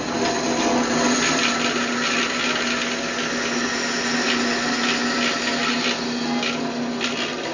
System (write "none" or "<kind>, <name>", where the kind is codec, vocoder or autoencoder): none